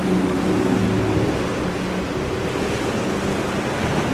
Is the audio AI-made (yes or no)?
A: no